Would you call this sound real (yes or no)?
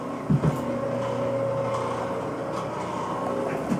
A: yes